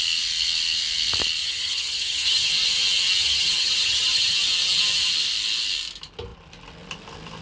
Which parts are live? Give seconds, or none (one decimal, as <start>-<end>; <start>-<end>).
0.0-1.4; 2.5-3.2; 4.3-7.4